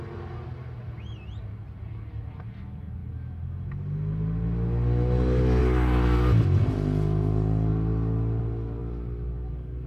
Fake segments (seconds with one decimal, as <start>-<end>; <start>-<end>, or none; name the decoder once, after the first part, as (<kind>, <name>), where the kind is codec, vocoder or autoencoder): none